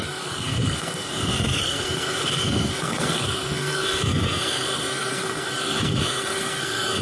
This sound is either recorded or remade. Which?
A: remade